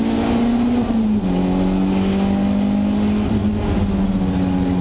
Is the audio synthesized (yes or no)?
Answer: no